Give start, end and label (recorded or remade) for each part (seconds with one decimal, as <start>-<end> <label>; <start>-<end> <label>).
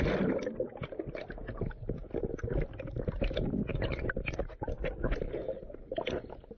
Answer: 0.0-6.6 recorded